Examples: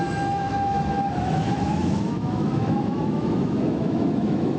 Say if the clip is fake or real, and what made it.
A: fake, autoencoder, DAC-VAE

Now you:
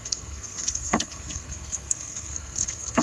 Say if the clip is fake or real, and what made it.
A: fake, codec, SNAC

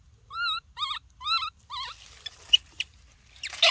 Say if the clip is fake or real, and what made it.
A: real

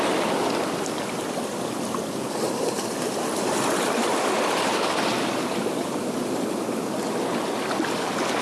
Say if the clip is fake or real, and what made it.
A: real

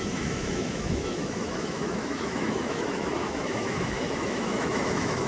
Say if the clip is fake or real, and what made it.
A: fake, autoencoder, DAC-VAE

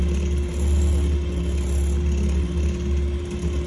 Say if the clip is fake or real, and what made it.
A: real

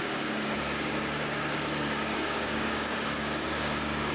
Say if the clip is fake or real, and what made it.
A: fake, codec, DAC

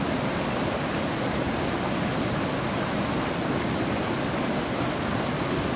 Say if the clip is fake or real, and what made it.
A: real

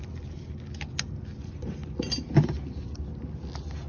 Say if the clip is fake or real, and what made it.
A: real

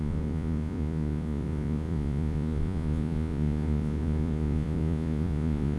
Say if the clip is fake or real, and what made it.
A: fake, vocoder, Vocos